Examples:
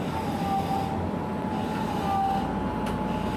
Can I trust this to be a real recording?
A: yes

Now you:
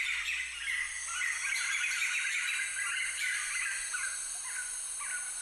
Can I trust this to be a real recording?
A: yes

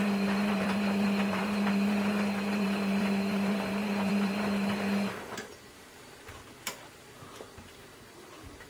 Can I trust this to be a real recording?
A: no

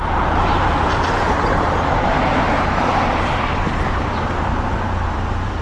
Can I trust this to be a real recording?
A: no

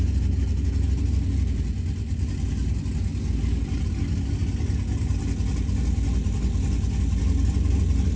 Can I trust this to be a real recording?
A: yes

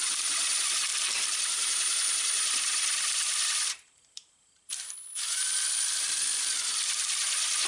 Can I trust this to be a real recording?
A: no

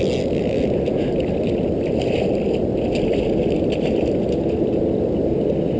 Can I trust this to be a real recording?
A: yes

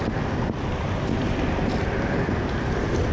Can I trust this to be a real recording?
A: yes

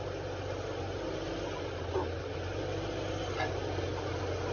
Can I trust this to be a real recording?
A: yes